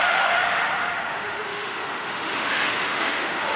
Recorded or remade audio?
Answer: remade